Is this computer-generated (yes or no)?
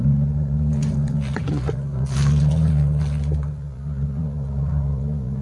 yes